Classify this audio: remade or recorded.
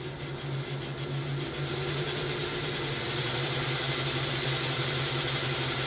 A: recorded